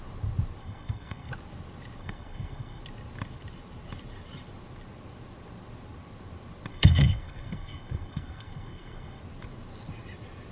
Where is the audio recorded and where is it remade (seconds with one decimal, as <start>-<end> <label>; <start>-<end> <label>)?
0.0-0.6 recorded; 0.6-1.3 remade; 1.3-2.0 recorded; 2.0-2.8 remade; 2.8-6.7 recorded; 6.7-9.2 remade; 9.2-10.5 recorded